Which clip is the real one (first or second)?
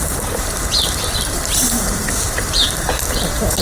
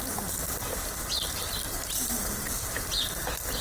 second